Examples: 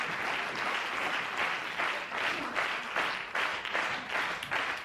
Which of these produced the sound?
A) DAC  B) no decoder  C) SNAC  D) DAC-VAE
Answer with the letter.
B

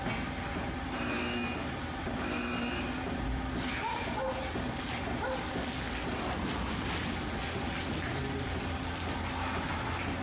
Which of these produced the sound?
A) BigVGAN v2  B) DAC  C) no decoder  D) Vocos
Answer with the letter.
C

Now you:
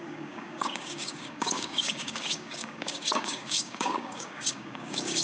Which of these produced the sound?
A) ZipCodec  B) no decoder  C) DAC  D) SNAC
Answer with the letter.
C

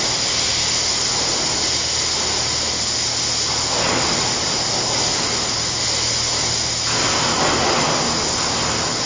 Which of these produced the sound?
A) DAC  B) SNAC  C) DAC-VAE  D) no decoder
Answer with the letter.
D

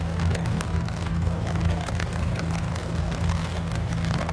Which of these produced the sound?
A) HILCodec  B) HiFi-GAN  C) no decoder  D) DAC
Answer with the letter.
D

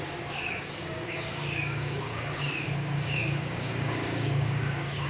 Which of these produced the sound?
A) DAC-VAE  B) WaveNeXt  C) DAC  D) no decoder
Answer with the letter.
C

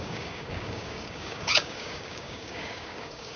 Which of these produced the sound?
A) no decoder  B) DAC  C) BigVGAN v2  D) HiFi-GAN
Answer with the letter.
B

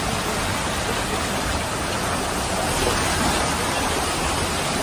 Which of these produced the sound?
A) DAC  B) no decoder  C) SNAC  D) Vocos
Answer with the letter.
B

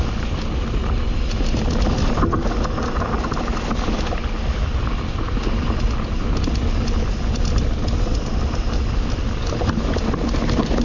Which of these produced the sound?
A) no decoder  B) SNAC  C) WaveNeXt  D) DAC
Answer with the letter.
A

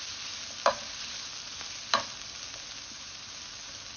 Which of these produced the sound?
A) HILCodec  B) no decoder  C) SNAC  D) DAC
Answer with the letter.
B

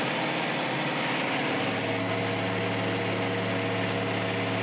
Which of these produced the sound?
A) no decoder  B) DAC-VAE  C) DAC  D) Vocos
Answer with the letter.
A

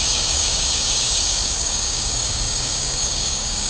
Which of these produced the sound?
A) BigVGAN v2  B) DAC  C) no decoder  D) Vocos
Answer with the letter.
B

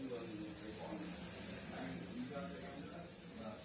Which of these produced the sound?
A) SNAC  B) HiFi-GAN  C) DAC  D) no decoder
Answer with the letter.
D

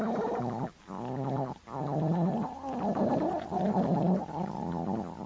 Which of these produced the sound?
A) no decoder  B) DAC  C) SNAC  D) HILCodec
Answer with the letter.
A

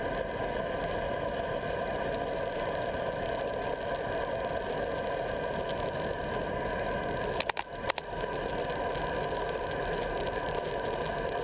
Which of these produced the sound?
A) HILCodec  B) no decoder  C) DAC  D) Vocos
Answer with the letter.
B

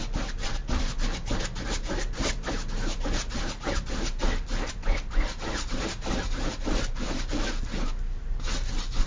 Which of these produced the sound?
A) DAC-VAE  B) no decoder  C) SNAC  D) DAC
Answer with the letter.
B